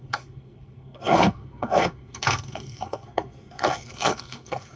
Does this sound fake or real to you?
fake